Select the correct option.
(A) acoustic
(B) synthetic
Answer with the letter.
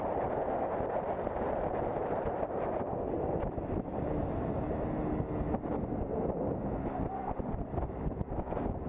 A